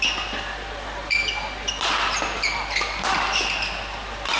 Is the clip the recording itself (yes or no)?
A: yes